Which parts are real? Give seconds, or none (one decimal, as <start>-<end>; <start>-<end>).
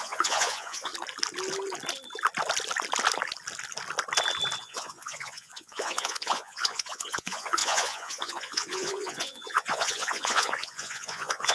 0.9-4.6